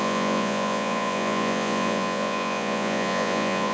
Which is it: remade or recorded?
remade